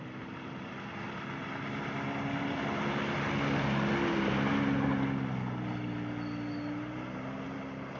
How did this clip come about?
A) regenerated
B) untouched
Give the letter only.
B